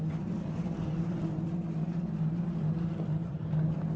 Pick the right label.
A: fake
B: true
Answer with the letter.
B